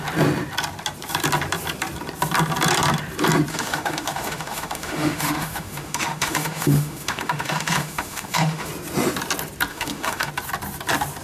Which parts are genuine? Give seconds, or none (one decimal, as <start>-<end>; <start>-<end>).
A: 0.0-3.5; 8.7-9.7; 10.3-11.2